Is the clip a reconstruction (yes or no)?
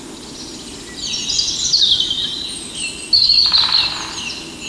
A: no